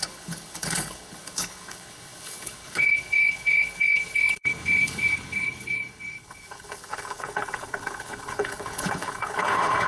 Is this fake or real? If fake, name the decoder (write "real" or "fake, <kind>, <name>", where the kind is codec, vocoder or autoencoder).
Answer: fake, codec, HILCodec